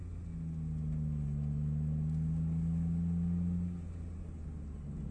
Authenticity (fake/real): real